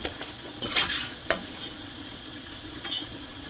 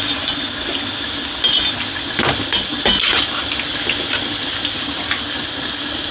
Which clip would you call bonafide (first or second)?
second